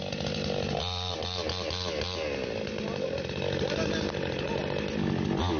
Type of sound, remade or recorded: recorded